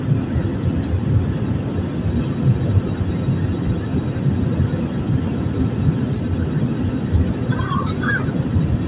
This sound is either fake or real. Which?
real